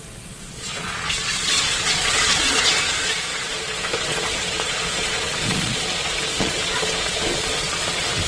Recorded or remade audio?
remade